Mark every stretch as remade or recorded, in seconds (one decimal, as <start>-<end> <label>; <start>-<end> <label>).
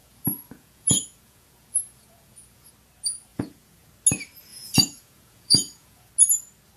0.0-2.7 remade; 2.7-3.3 recorded; 3.3-3.9 remade; 3.9-4.5 recorded; 4.5-6.1 remade; 6.1-6.8 recorded